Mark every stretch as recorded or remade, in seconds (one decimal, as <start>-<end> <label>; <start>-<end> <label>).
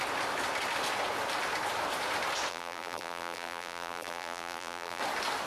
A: 0.0-2.5 recorded; 2.5-5.0 remade; 5.0-5.5 recorded